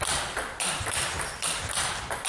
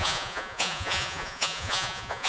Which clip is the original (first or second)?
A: first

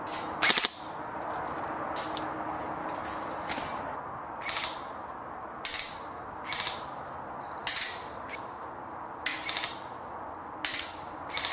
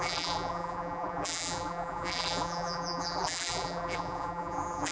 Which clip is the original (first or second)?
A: first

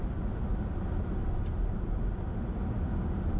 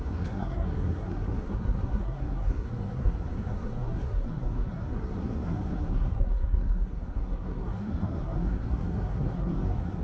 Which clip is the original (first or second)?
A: first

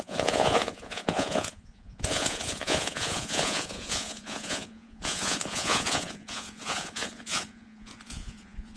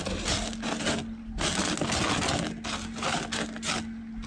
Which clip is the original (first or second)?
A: second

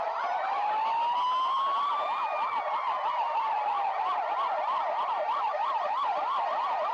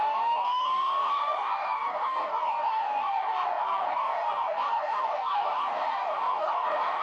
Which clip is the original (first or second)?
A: first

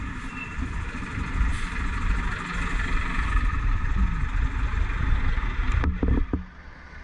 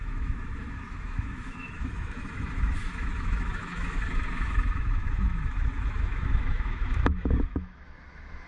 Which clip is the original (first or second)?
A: first